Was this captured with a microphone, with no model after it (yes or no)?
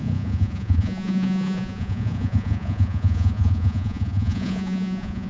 no